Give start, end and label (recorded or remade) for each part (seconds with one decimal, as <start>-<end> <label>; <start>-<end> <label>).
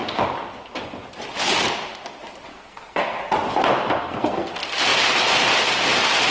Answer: 0.0-2.5 recorded; 2.5-3.2 remade; 3.2-4.0 recorded; 4.0-4.5 remade; 4.5-6.3 recorded